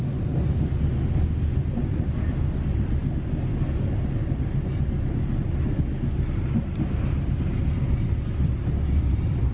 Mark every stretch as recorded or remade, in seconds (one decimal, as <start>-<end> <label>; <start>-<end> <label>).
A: 0.0-9.5 recorded